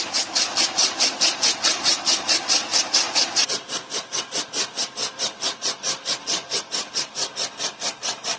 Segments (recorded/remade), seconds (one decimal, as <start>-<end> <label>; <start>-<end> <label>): 0.0-6.4 recorded; 6.4-7.3 remade; 7.3-8.4 recorded